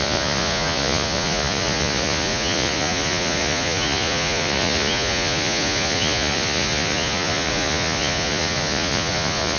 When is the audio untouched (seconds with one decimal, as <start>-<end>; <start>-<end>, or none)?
none